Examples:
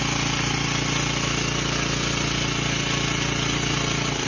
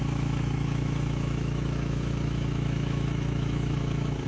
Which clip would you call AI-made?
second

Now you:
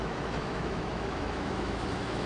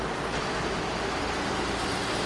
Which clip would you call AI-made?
first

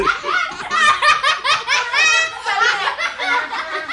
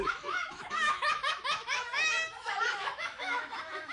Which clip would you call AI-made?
second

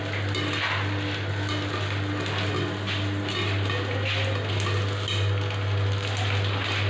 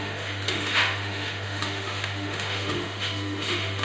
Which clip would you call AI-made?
second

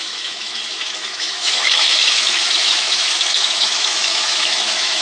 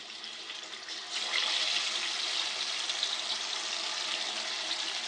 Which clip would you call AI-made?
first